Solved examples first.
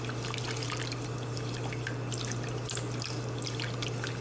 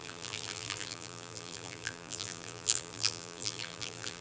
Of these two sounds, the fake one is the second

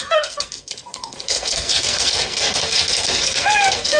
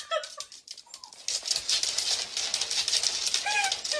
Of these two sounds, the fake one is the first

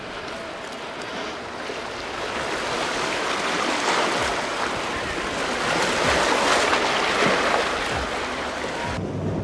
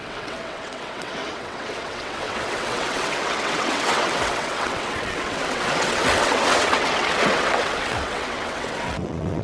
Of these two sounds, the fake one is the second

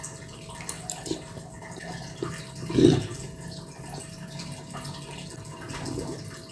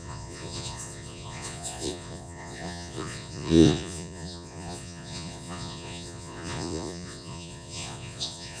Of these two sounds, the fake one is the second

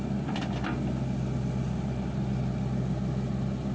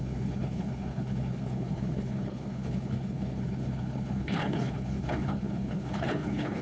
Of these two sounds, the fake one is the second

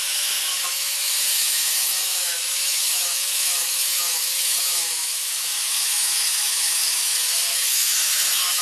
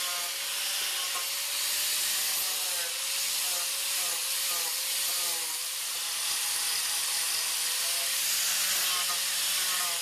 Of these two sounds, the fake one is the first